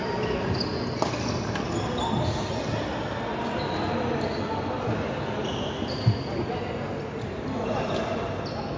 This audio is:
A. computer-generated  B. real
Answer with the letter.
B